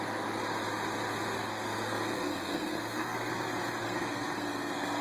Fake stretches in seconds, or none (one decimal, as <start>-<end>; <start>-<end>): 1.5-3.3; 3.8-5.0